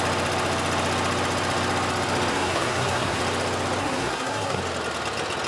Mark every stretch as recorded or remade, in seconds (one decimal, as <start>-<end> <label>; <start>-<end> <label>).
0.0-2.3 recorded; 2.3-3.2 remade; 3.2-3.8 recorded; 3.8-4.6 remade; 4.6-5.5 recorded

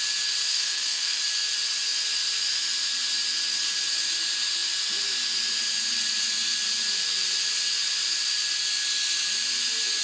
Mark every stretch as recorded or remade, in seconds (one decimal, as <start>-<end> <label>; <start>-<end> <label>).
0.0-0.5 recorded; 0.5-1.2 remade; 1.2-10.0 recorded

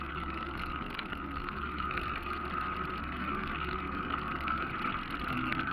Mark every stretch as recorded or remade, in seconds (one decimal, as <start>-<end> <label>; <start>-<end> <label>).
0.0-2.4 remade; 2.4-3.0 recorded; 3.0-4.7 remade; 4.7-5.3 recorded; 5.3-5.7 remade

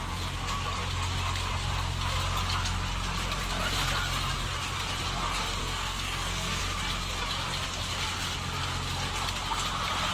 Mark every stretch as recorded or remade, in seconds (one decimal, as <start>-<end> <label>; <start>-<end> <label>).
0.0-5.6 recorded; 5.6-6.6 remade; 6.6-10.1 recorded

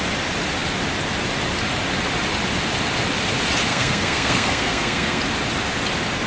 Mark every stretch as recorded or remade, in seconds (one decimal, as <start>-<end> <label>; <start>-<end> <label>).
0.0-3.7 recorded; 3.7-5.2 remade; 5.2-6.3 recorded

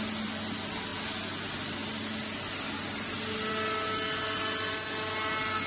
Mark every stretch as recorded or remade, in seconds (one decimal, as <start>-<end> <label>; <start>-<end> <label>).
0.0-5.7 recorded

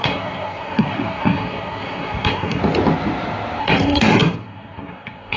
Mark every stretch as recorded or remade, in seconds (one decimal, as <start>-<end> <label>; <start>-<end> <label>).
0.0-2.6 remade; 2.6-3.6 recorded; 3.6-5.4 remade

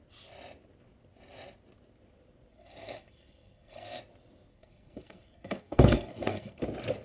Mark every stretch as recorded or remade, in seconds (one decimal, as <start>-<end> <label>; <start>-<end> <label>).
0.0-2.5 recorded; 2.5-4.0 remade; 4.0-4.5 recorded; 4.5-6.6 remade; 6.6-7.0 recorded